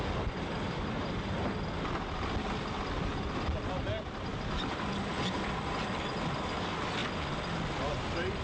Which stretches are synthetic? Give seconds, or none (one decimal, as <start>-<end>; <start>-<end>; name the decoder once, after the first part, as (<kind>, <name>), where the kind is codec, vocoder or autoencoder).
none